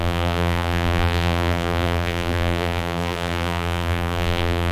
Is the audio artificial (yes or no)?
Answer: yes